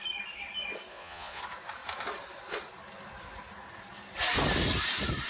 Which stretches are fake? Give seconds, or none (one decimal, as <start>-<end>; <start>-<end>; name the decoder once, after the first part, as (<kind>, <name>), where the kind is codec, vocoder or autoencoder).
0.9-1.4 (vocoder, Vocos)